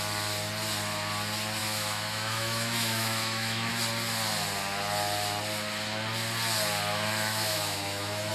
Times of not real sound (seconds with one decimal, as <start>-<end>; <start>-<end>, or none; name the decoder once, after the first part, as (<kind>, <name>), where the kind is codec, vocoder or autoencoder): 1.6-3.7 (autoencoder, DAC-VAE); 6.9-8.3